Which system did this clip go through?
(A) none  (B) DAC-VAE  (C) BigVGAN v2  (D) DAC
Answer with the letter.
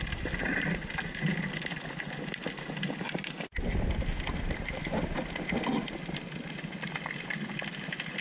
A